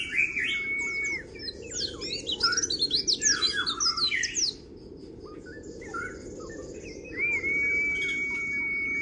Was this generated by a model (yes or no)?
no